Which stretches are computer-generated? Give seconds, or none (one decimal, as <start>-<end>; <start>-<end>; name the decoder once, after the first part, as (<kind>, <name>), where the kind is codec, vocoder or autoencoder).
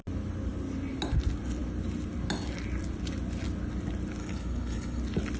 4.2-5.0 (codec, HILCodec)